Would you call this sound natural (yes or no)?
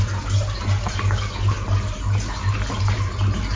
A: yes